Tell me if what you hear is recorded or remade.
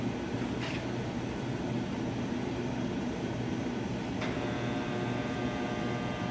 remade